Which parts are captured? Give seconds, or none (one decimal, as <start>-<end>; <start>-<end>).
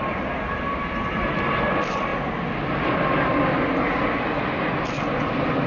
0.0-5.7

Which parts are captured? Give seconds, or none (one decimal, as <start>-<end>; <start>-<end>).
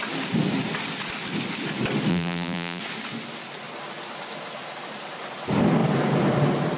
0.0-2.1; 2.8-6.8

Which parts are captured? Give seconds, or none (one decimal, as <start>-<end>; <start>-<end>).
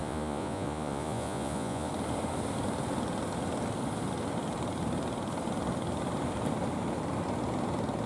1.9-8.1